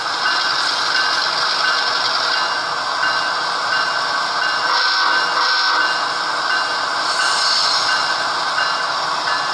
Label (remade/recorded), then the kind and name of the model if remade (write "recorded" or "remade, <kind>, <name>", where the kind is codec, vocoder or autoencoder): recorded